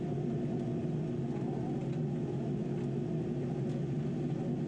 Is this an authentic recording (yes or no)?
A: yes